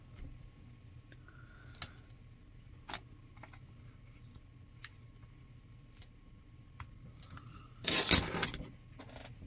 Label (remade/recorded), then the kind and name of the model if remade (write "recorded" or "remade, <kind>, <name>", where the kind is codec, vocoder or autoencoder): recorded